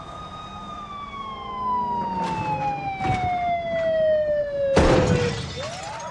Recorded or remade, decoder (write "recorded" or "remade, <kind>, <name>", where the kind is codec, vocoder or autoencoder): recorded